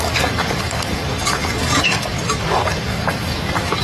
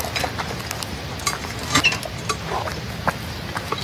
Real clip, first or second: second